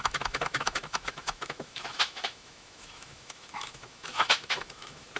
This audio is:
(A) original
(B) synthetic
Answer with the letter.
B